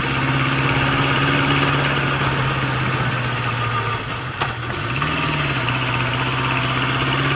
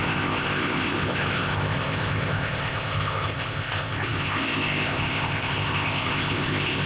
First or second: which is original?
first